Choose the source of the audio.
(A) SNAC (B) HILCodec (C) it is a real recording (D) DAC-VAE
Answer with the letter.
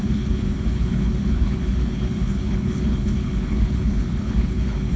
B